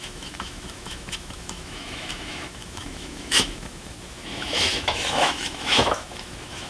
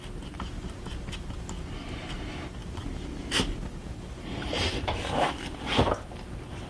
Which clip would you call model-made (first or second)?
first